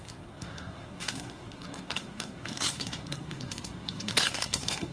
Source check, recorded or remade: remade